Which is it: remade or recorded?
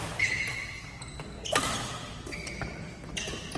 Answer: recorded